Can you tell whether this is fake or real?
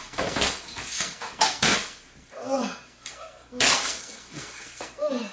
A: fake